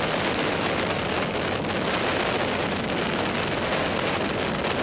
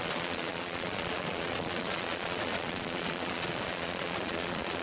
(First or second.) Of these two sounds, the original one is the first